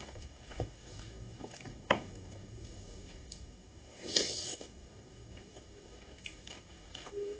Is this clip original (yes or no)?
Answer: no